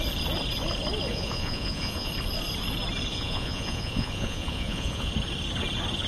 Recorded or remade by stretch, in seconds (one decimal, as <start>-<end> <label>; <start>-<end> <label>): 0.0-1.1 recorded; 1.1-2.1 remade; 2.1-3.1 recorded; 3.1-5.1 remade; 5.1-6.1 recorded

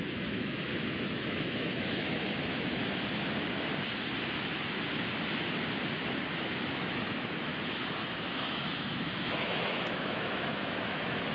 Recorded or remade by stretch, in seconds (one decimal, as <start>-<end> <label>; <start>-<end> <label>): 0.0-2.8 remade; 2.8-6.7 recorded; 6.7-7.5 remade; 7.5-8.5 recorded; 8.5-11.3 remade

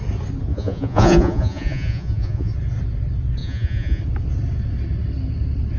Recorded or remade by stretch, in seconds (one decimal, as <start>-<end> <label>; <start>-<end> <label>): 0.0-0.5 recorded; 0.5-2.5 remade; 2.5-3.4 recorded; 3.4-4.0 remade; 4.0-5.8 recorded

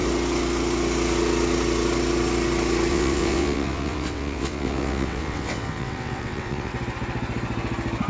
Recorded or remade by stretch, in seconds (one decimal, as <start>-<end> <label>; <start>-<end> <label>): 0.0-2.9 recorded; 2.9-6.7 remade; 6.7-8.1 recorded

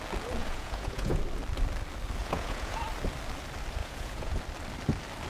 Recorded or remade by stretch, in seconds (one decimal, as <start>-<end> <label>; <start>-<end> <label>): 0.0-0.4 recorded; 0.4-1.2 remade; 1.2-2.2 recorded; 2.2-2.8 remade; 2.8-3.8 recorded; 3.8-4.4 remade; 4.4-5.3 recorded